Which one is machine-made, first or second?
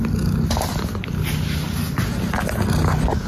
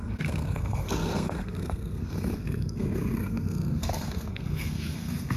second